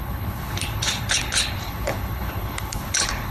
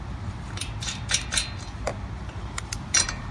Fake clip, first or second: first